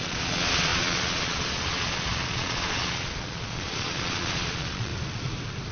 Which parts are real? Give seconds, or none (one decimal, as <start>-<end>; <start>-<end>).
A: 4.9-5.7